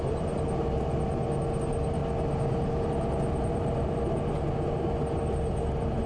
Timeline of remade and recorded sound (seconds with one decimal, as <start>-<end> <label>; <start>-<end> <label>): 0.0-6.1 recorded